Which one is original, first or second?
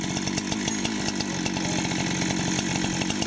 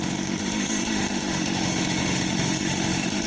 first